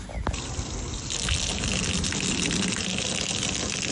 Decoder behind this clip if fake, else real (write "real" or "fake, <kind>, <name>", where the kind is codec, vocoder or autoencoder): real